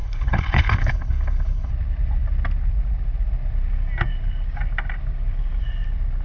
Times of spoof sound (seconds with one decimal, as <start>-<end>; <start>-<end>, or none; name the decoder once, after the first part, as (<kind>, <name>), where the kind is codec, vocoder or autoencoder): 0.0-1.7 (codec, HILCodec)